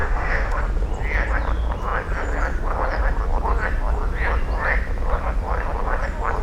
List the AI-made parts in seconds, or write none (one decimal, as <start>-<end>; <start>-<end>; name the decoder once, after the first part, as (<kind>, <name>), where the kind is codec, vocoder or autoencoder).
0.0-0.6 (autoencoder, DAC-VAE)